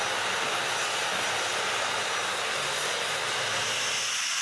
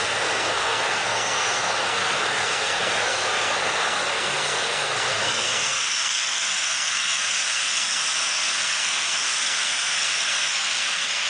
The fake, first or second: second